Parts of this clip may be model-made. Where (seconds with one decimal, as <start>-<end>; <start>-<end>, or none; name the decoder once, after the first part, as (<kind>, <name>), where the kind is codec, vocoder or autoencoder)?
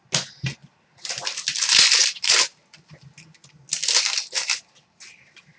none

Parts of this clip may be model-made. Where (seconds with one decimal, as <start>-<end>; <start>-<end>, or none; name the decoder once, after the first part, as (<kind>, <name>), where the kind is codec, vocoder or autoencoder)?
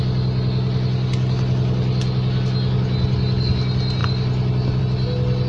none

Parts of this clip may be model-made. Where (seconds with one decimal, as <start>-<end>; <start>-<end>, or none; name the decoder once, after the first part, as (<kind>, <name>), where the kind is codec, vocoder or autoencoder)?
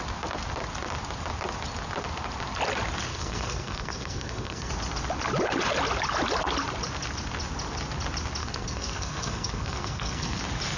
3.1-4.7 (codec, SNAC); 8.4-10.4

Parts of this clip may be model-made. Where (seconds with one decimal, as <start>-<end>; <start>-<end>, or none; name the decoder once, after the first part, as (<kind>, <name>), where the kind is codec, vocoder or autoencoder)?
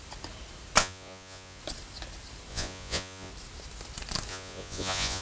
0.8-1.6 (vocoder, Vocos); 2.5-3.3; 4.3-5.2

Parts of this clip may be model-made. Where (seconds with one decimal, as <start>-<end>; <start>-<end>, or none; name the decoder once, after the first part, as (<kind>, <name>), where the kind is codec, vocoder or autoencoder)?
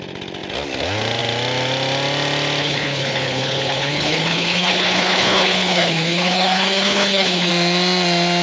2.6-7.5 (codec, HILCodec)